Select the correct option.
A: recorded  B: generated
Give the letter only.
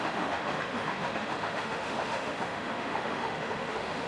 B